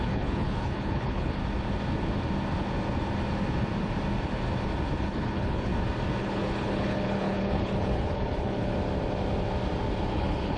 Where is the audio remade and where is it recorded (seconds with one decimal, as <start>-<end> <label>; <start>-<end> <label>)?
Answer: 0.0-1.4 remade; 1.4-5.0 recorded; 5.0-5.7 remade; 5.7-6.2 recorded; 6.2-8.7 remade; 8.7-10.1 recorded; 10.1-10.6 remade